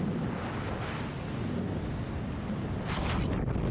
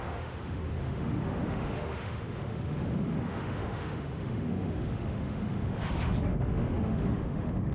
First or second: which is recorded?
first